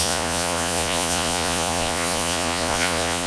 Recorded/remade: remade